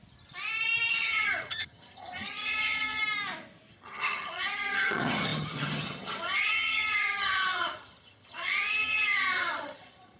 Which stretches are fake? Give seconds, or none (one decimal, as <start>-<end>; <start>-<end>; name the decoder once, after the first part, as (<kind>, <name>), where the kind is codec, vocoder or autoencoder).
0.9-3.0 (vocoder, HiFi-GAN); 3.7-10.2